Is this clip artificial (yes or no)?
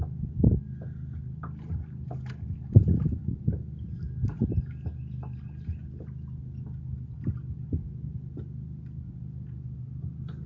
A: no